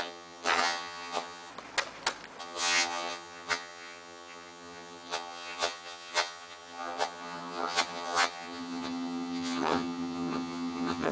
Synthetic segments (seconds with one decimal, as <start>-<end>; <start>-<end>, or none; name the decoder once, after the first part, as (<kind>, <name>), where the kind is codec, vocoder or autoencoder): 0.0-1.5 (vocoder, HiFi-GAN); 2.4-11.1